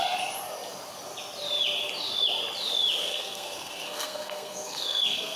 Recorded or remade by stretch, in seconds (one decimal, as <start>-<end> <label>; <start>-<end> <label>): 0.0-3.0 recorded; 3.0-5.4 remade